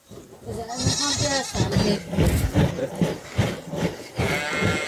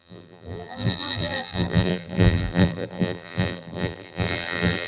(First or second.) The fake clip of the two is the second